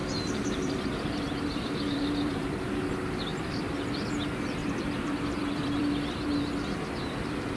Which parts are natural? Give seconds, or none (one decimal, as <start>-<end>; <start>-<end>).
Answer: 2.7-3.3; 4.0-4.6